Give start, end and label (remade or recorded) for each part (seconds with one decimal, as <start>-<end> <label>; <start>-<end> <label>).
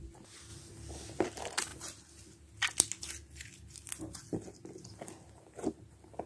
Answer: 0.0-6.3 recorded